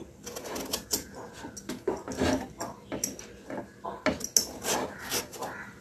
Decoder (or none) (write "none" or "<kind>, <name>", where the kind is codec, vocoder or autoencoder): none